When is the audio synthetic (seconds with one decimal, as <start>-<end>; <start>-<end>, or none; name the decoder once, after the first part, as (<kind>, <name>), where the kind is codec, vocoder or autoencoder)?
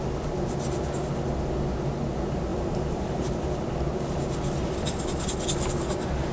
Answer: 2.5-3.3 (vocoder, BigVGAN v2)